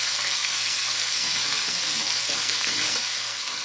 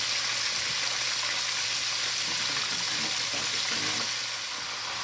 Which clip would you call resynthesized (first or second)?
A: first